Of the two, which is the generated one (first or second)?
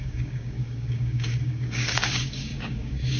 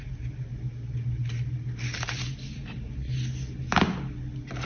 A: first